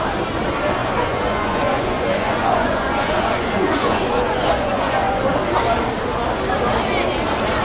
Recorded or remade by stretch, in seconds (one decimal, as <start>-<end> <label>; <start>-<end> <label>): 0.0-0.8 recorded; 0.8-5.2 remade; 5.2-7.6 recorded